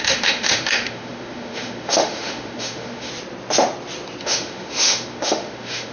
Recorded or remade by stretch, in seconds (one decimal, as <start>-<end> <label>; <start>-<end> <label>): 0.0-3.1 remade; 3.1-4.2 recorded; 4.2-5.9 remade